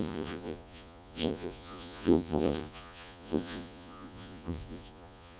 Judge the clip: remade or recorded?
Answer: remade